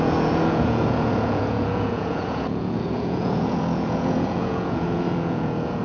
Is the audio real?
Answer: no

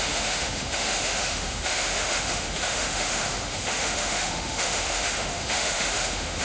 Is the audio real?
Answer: no